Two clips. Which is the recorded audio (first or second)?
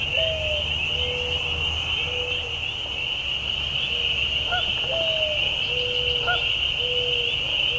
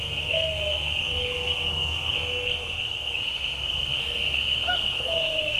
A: first